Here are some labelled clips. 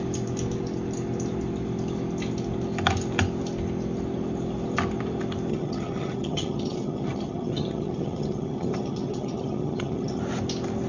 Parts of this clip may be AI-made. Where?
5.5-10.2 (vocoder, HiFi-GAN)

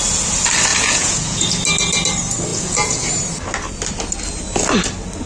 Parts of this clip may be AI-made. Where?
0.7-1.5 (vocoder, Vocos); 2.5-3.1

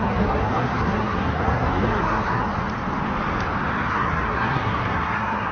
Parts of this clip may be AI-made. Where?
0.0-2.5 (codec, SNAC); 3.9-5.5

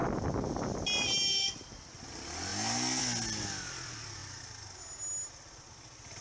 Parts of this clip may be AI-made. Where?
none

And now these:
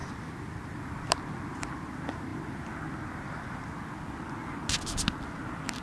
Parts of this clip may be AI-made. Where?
none

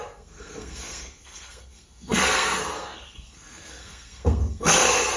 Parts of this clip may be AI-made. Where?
0.0-5.2 (codec, SNAC)

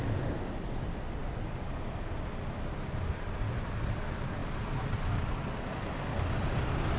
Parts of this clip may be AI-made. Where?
4.4-6.0 (vocoder, BigVGAN v2)

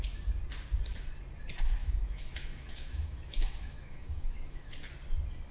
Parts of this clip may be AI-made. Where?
1.8-4.7 (autoencoder, DAC-VAE)